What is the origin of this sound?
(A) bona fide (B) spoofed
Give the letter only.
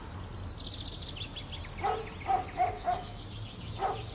A